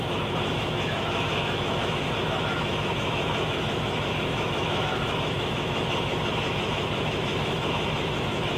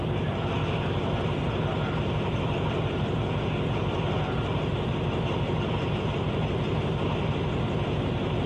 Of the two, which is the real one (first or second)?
second